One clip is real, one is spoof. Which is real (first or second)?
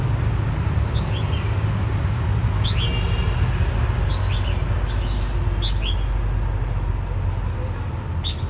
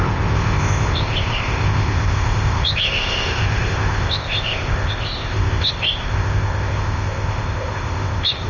first